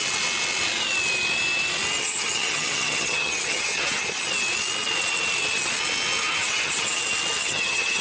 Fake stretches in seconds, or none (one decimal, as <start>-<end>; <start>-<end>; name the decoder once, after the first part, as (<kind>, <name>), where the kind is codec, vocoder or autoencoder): 2.0-4.2 (vocoder, HiFi-GAN); 6.2-7.0; 7.4-8.0